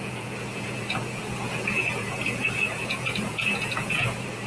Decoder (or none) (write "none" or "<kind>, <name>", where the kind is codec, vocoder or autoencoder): vocoder, Vocos